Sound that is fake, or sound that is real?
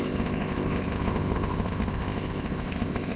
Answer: fake